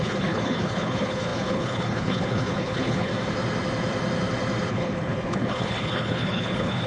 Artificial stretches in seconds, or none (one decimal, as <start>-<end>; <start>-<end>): 0.0-3.1; 4.7-6.9